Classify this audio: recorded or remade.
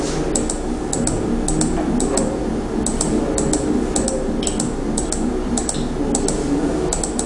recorded